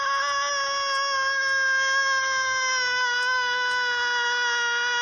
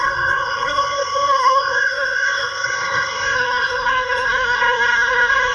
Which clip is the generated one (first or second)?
second